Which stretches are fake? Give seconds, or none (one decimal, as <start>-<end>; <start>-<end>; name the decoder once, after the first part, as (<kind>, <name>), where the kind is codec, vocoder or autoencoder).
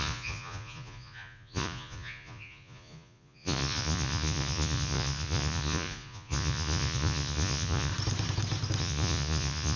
0.0-7.9 (vocoder, Vocos); 8.8-9.8